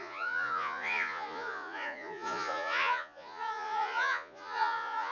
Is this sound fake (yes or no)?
yes